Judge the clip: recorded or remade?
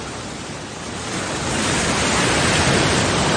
recorded